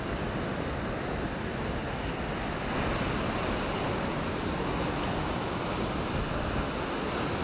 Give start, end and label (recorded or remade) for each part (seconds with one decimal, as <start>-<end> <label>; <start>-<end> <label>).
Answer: 0.0-7.4 recorded